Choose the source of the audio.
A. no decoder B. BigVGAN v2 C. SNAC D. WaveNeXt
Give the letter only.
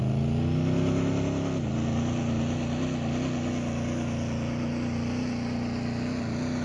A